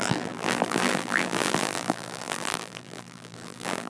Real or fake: fake